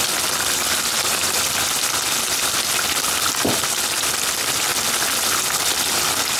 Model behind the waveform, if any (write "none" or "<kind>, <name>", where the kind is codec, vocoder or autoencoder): none